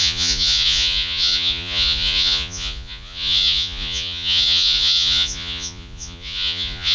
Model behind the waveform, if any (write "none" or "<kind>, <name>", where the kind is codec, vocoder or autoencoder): vocoder, Vocos